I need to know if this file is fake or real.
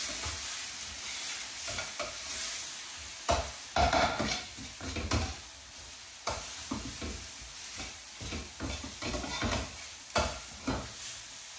real